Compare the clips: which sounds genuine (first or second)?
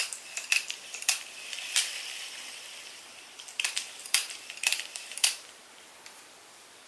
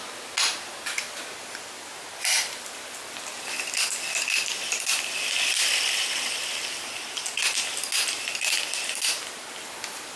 second